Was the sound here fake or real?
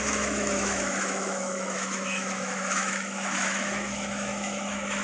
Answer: fake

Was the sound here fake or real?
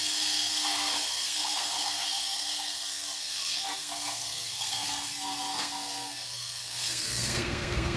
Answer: fake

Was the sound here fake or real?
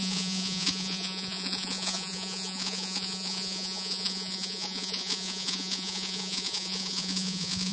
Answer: fake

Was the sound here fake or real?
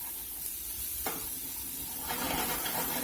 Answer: real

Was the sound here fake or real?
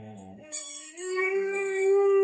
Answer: fake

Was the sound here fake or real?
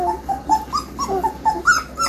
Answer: real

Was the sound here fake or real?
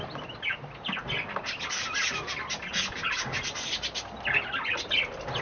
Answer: real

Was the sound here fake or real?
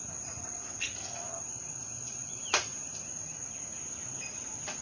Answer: real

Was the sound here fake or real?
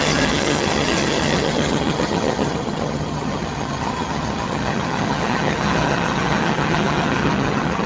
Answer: fake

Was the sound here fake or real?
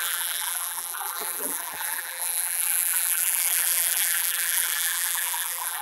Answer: fake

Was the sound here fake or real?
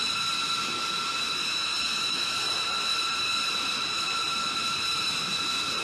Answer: real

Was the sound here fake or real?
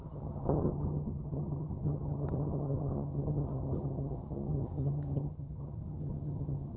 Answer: fake